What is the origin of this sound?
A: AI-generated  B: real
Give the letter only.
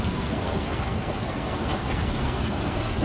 A